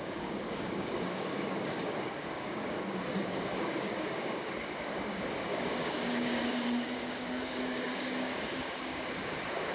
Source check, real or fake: fake